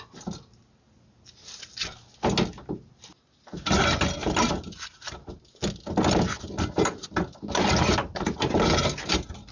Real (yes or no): yes